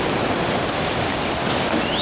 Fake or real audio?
real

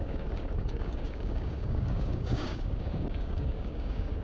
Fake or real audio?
fake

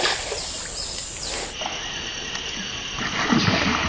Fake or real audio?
real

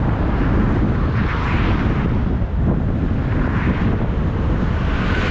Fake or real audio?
real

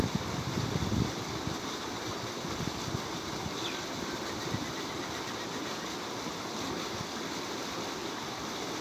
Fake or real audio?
real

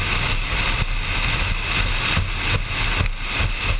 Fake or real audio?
real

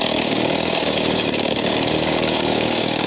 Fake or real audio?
fake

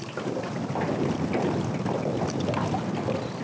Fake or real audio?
real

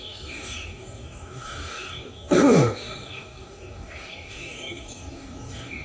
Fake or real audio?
fake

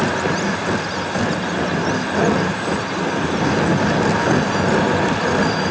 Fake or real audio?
real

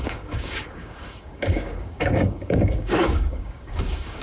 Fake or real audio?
fake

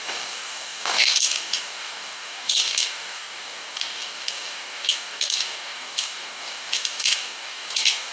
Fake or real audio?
fake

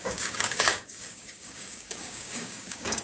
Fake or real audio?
fake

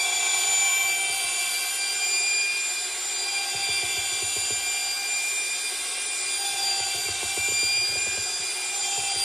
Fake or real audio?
real